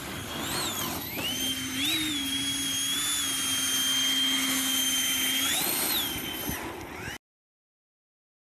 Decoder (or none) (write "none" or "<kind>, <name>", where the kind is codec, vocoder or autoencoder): none